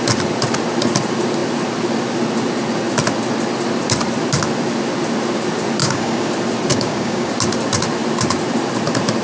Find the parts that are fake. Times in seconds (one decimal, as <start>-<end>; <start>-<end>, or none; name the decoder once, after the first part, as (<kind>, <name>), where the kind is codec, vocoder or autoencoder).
5.8-6.3 (codec, DAC); 6.7-7.3